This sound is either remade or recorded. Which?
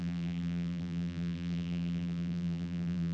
remade